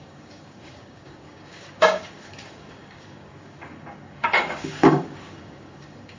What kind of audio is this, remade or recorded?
remade